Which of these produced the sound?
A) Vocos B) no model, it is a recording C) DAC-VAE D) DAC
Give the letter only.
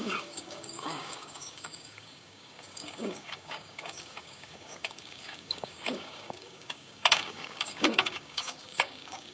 D